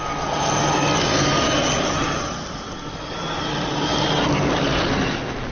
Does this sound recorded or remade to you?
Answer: recorded